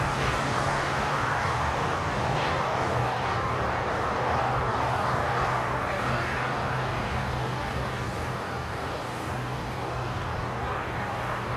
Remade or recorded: remade